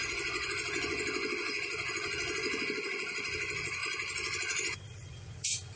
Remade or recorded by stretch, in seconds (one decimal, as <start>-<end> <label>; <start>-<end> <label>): 0.0-3.8 remade; 3.8-4.9 recorded; 4.9-5.8 remade